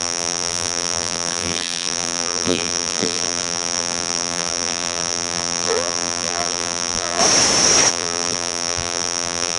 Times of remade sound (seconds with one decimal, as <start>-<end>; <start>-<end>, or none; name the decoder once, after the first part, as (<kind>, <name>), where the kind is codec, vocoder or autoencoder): 0.0-7.2 (vocoder, BigVGAN v2); 7.9-9.6